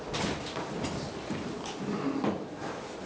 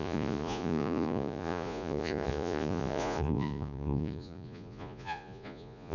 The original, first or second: first